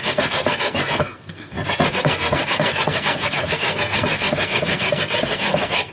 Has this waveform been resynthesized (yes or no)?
yes